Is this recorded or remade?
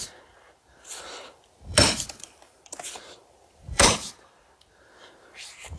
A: remade